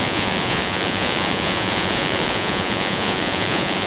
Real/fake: fake